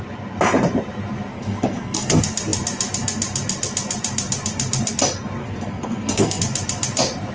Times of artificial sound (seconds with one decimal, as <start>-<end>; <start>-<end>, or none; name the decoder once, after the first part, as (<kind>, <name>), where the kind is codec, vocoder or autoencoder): 1.3-2.1 (codec, SNAC); 5.4-6.4